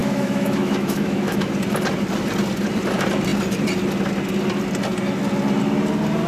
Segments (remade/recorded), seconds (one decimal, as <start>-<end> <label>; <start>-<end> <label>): 0.0-1.5 remade; 1.5-6.3 recorded